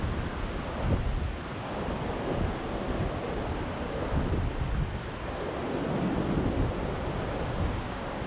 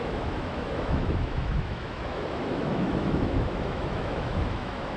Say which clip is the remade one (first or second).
second